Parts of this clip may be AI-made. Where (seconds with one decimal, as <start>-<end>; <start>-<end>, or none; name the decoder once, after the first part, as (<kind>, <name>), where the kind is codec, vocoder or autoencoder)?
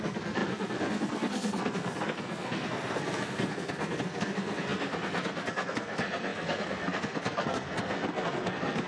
0.0-8.9 (codec, SNAC)